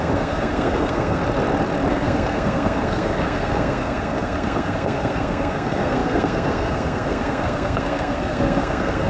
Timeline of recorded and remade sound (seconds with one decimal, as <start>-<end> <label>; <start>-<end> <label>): 0.0-1.2 remade; 1.2-1.9 recorded; 1.9-9.1 remade